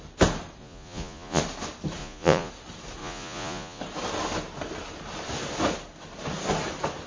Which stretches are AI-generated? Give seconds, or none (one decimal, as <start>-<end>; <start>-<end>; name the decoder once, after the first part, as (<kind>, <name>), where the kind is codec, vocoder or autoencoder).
0.6-1.4 (vocoder, Vocos); 2.0-2.5; 3.0-3.8